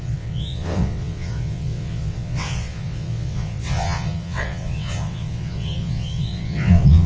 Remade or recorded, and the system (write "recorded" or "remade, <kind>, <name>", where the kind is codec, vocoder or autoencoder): remade, vocoder, WaveNeXt